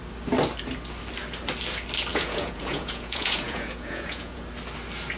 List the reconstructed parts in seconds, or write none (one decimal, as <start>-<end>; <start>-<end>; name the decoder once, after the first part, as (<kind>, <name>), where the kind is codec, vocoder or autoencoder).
2.1-4.4 (vocoder, Vocos)